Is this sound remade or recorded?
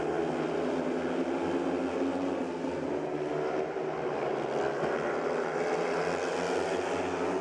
recorded